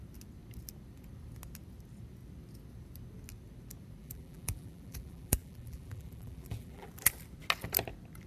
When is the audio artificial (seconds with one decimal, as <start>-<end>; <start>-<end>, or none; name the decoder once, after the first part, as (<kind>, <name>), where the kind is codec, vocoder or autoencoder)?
4.0-6.9 (vocoder, BigVGAN v2)